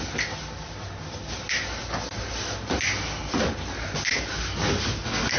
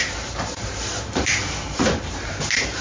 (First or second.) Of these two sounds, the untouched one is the first